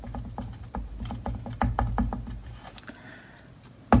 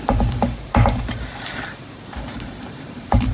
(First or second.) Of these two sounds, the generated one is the second